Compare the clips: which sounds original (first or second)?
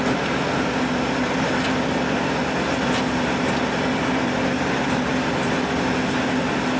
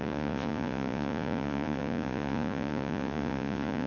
first